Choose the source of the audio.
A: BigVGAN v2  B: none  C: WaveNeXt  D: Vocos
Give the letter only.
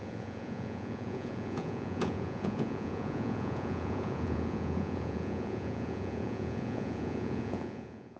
D